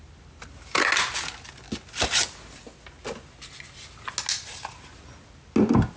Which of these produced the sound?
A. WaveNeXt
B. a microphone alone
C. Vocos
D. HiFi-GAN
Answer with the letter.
B